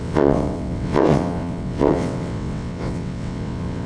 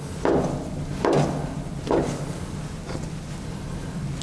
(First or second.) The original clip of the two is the second